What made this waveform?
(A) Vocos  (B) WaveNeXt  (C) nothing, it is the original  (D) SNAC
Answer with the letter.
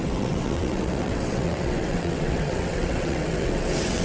B